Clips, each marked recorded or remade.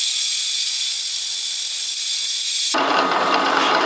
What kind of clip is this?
recorded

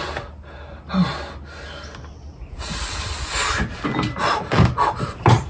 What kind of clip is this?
recorded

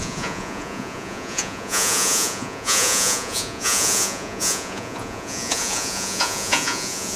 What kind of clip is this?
remade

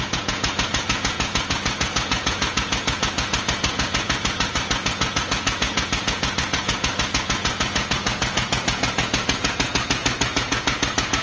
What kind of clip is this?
remade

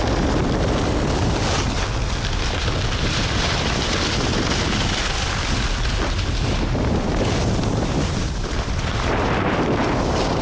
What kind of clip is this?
recorded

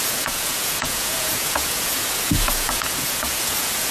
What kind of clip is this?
remade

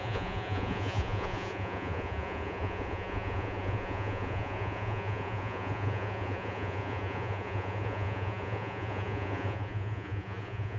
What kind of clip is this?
remade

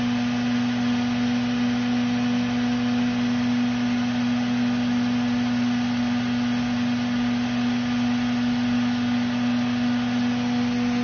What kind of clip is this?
recorded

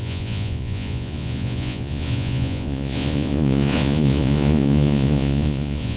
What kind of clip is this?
remade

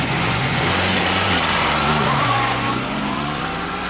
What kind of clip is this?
remade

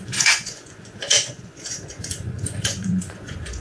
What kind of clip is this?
remade